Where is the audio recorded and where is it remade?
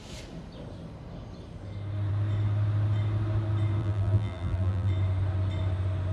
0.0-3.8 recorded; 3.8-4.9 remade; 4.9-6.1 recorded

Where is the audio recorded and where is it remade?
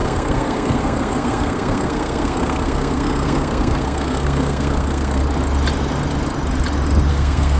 0.0-5.2 remade; 5.2-7.1 recorded; 7.1-7.6 remade